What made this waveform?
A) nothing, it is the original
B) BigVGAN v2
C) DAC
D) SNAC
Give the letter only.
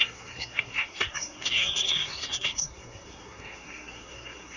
D